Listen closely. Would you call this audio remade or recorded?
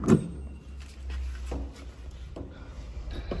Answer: recorded